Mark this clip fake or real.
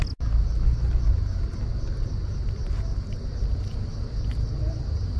real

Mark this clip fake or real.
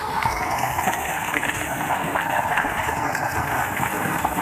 fake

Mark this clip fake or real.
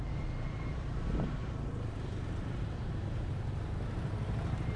fake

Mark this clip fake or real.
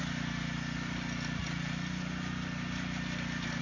real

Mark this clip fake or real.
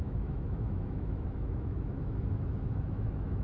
fake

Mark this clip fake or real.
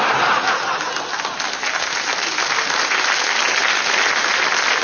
real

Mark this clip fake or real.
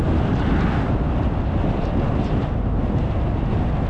real